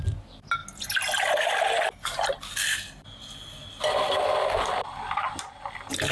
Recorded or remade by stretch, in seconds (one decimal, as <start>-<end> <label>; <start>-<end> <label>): 0.0-6.1 recorded